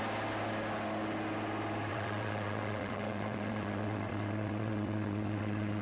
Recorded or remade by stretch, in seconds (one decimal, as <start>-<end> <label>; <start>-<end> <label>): 0.0-1.9 recorded; 1.9-5.8 remade